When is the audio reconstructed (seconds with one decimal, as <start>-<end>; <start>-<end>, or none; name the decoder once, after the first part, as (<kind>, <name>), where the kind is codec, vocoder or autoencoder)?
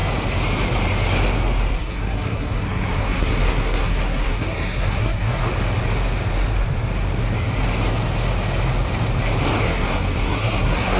1.7-5.4 (codec, SNAC); 9.6-11.0